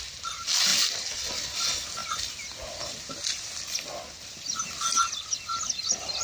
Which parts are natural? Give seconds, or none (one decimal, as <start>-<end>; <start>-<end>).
0.0-6.2